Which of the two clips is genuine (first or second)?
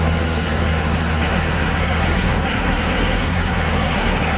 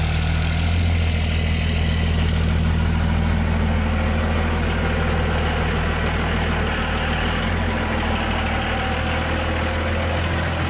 second